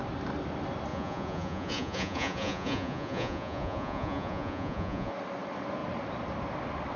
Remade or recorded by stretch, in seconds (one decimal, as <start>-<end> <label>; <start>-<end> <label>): 0.0-0.9 recorded; 0.9-5.1 remade; 5.1-7.0 recorded